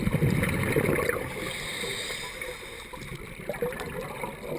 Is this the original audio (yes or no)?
yes